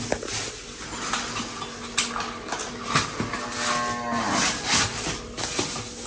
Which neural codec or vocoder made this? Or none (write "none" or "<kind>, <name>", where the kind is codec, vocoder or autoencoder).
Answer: none